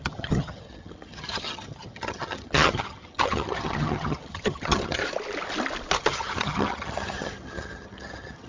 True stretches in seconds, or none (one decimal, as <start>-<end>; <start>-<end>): 5.0-6.0